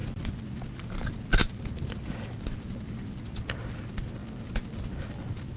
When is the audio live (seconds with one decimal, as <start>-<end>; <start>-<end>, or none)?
0.0-5.6